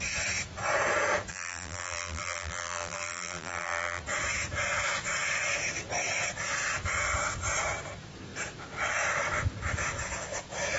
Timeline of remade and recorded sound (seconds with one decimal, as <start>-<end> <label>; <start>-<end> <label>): 0.0-1.3 recorded; 1.3-4.0 remade; 4.0-10.8 recorded